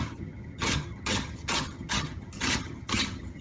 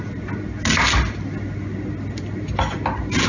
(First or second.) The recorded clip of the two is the second